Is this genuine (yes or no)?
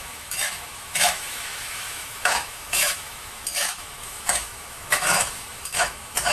no